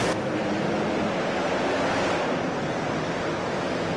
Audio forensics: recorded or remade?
recorded